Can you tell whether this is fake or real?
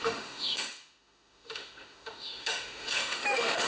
fake